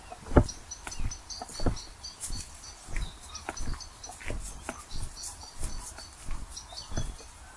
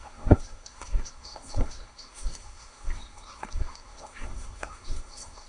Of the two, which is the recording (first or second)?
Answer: first